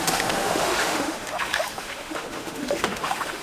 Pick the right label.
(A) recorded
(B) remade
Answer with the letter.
B